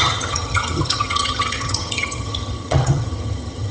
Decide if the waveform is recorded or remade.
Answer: remade